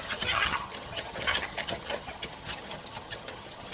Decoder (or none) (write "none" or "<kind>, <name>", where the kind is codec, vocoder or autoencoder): vocoder, HiFi-GAN